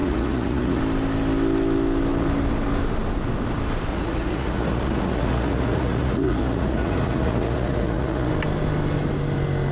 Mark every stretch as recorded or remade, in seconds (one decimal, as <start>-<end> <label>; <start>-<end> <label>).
0.0-0.8 remade; 0.8-3.9 recorded; 3.9-8.3 remade; 8.3-9.7 recorded